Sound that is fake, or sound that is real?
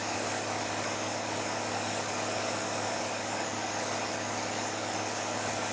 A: fake